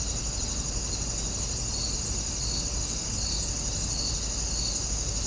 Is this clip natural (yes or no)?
yes